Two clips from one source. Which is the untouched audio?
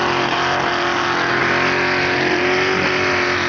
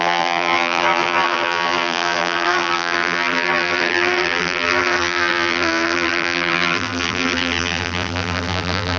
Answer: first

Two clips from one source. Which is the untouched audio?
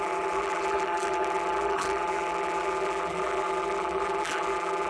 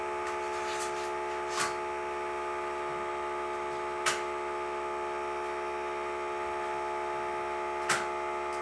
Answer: second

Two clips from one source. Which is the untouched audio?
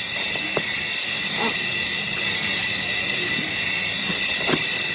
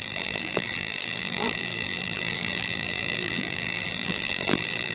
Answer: first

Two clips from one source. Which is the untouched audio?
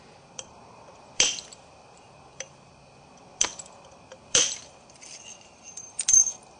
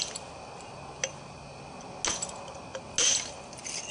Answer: second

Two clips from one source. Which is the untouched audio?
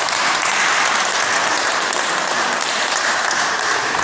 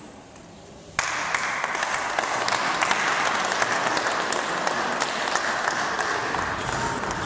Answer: second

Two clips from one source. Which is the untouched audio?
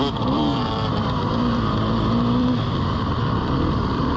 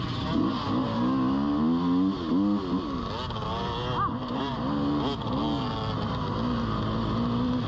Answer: second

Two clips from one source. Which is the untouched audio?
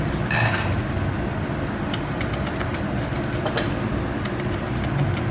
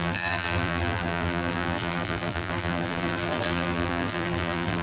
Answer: first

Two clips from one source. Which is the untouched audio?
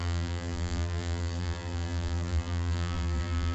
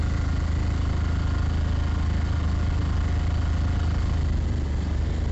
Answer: second